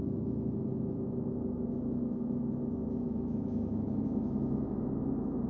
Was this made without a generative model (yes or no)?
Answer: no